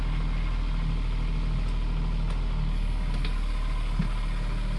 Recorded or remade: recorded